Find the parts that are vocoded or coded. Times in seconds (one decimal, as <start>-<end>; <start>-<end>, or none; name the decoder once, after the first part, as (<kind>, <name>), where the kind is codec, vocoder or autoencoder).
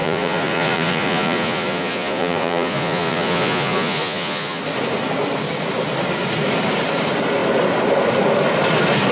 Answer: 0.0-4.6 (vocoder, Vocos)